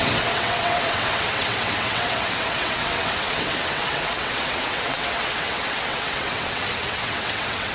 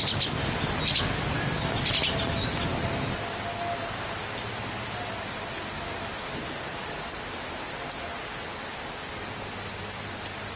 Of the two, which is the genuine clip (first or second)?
second